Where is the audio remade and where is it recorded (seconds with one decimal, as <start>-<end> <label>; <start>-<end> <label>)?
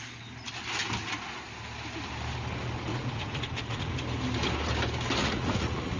0.0-2.9 recorded; 2.9-3.9 remade; 3.9-5.2 recorded; 5.2-6.0 remade